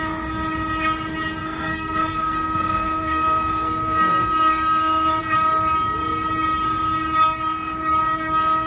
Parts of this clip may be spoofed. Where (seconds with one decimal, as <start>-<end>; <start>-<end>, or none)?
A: 1.4-5.2